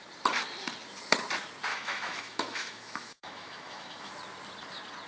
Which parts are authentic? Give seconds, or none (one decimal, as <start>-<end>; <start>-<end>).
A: 0.0-1.7; 4.1-5.1